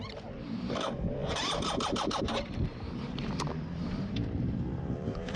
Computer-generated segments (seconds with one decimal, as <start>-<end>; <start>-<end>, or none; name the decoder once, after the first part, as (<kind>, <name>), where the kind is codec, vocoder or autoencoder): 0.0-5.4 (vocoder, BigVGAN v2)

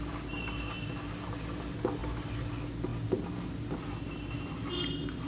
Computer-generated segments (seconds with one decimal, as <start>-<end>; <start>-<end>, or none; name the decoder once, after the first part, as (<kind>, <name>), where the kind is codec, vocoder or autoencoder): 2.0-2.5 (vocoder, BigVGAN v2); 2.9-4.5

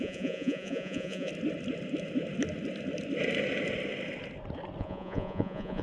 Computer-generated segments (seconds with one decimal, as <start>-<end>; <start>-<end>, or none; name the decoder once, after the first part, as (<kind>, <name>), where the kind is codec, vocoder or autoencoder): 0.0-1.3 (vocoder, Vocos); 4.8-5.8

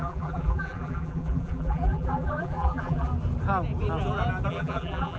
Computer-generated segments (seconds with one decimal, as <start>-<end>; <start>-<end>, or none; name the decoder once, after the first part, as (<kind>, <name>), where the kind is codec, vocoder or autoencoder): 0.0-3.1 (vocoder, BigVGAN v2); 4.5-5.2

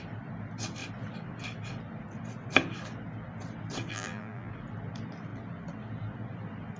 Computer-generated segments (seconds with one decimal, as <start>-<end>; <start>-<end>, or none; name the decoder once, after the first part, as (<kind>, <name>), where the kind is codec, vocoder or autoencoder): 3.9-4.5 (vocoder, BigVGAN v2)

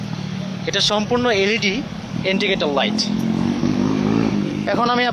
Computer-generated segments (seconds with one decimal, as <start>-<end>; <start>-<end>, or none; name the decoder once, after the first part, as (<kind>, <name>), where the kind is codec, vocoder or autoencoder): 0.0-5.1 (codec, DAC)

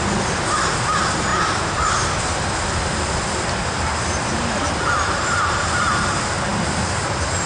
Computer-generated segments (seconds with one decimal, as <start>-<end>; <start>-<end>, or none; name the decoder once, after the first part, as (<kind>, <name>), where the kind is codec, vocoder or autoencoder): none

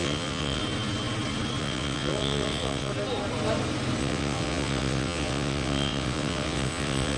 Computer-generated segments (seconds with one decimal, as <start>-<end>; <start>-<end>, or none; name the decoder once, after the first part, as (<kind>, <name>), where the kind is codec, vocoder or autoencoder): 0.0-0.6 (vocoder, WaveNeXt); 1.6-2.9; 4.0-7.2